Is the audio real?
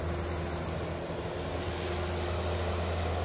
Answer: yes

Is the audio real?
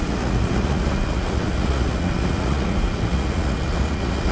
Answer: no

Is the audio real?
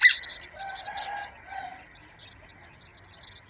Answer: yes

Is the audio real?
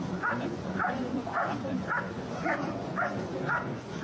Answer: no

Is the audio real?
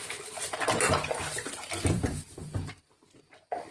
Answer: yes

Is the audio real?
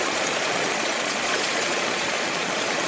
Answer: no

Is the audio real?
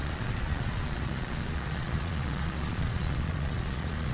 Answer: no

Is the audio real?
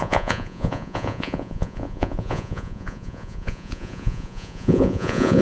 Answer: no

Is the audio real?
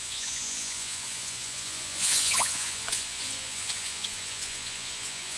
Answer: no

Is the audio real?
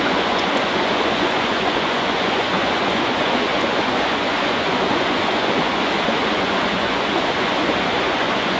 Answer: no